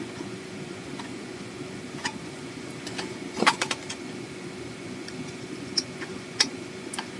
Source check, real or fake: fake